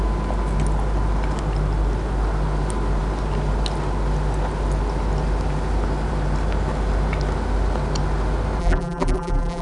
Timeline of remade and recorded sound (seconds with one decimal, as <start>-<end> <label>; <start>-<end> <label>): 0.0-8.6 recorded; 8.6-9.6 remade